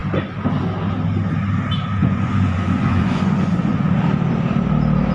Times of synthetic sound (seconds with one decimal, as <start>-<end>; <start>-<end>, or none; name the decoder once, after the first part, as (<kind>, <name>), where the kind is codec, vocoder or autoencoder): 2.0-4.0 (vocoder, Vocos)

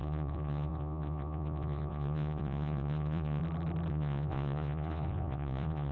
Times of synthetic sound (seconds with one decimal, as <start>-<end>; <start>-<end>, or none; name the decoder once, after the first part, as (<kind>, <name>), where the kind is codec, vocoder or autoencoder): 0.0-3.4 (vocoder, Vocos); 3.9-5.9

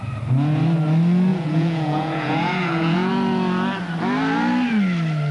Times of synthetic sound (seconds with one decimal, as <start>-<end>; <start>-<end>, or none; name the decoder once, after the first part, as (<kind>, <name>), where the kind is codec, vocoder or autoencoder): 1.3-3.1 (vocoder, Vocos)

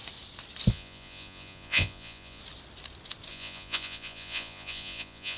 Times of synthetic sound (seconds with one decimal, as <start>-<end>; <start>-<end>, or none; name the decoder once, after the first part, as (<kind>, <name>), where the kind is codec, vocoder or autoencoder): 0.7-2.4 (vocoder, Vocos); 3.3-5.4

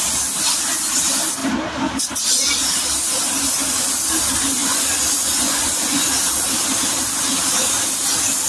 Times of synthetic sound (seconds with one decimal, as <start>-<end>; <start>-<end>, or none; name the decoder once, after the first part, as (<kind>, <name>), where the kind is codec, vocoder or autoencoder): 4.6-6.1 (vocoder, Vocos)